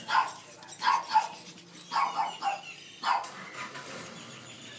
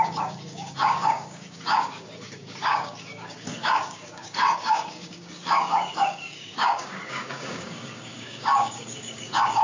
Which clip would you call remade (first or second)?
second